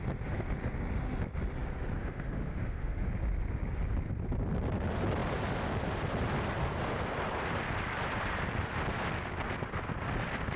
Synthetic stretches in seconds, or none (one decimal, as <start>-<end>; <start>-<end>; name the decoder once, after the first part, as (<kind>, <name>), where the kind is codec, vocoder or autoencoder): 2.0-3.1 (autoencoder, DAC-VAE)